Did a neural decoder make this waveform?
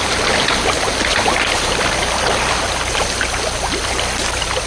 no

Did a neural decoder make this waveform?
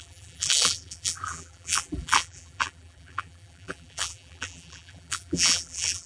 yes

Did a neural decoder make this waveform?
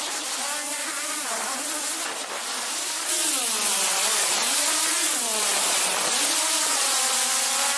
no